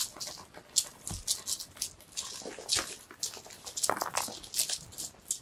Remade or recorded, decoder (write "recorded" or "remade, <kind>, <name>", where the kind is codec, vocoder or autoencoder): recorded